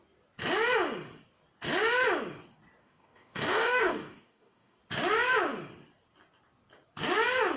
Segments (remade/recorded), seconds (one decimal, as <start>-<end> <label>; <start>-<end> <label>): 0.0-2.8 recorded; 2.8-4.8 remade; 4.8-7.6 recorded

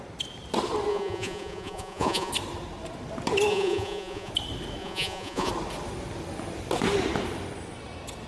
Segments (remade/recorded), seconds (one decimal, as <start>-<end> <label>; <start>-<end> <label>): 0.0-0.9 recorded; 0.9-2.3 remade; 2.3-3.5 recorded; 3.5-4.3 remade; 4.3-4.8 recorded; 4.8-5.5 remade; 5.5-8.3 recorded

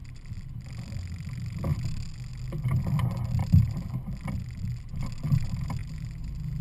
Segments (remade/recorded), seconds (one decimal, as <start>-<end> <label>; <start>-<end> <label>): 0.0-3.4 recorded; 3.4-4.1 remade; 4.1-5.8 recorded; 5.8-6.6 remade

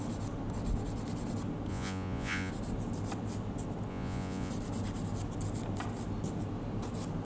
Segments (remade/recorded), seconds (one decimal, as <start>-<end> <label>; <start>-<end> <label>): 0.0-1.7 recorded; 1.7-2.5 remade; 2.5-3.9 recorded; 3.9-4.5 remade; 4.5-7.2 recorded

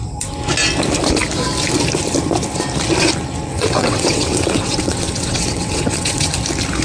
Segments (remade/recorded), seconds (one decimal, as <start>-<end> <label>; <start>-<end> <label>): 0.0-3.5 recorded; 3.5-6.3 remade; 6.3-6.8 recorded